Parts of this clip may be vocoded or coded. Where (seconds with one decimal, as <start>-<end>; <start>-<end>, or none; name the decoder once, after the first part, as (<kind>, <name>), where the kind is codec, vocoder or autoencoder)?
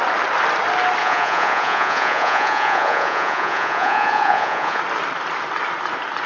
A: 1.0-4.8 (vocoder, Vocos)